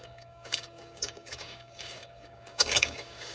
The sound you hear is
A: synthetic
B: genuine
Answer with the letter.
A